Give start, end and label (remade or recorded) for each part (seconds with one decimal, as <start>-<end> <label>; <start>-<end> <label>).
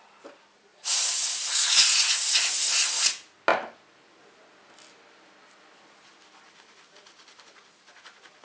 0.0-0.7 recorded; 0.7-2.5 remade; 2.5-8.4 recorded